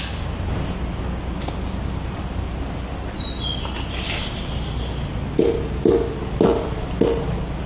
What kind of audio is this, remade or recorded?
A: recorded